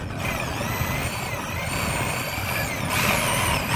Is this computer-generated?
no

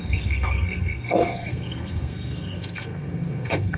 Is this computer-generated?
yes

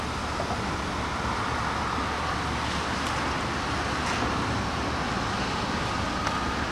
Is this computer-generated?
no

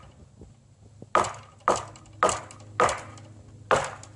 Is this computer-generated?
no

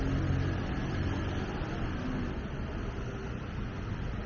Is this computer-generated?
no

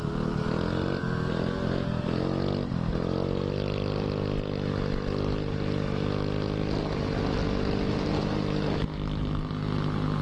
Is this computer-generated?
no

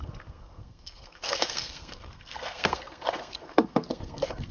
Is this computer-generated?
yes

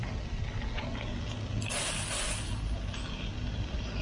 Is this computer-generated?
no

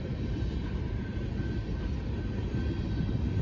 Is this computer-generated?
no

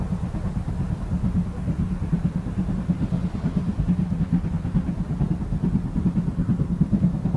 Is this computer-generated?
no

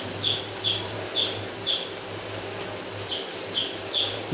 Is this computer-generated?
no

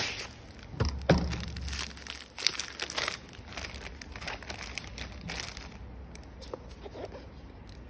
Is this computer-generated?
no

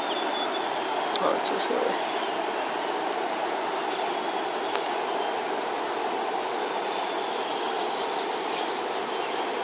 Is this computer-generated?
no